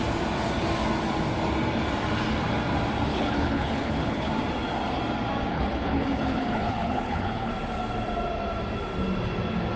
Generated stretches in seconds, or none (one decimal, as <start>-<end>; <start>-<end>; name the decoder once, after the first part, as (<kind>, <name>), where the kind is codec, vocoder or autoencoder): 3.1-4.3 (codec, HILCodec); 5.5-7.5